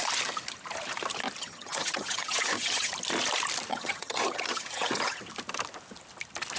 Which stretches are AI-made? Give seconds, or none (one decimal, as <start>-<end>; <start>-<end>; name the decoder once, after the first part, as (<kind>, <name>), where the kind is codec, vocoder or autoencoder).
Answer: 1.4-2.9 (vocoder, HiFi-GAN); 3.7-5.2